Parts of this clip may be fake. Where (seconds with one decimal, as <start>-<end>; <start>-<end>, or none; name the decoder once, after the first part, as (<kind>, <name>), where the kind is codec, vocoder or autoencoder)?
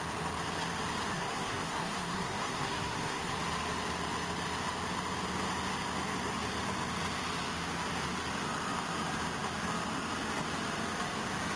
1.1-3.4 (codec, SNAC)